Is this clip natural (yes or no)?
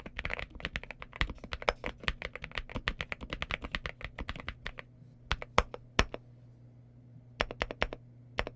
yes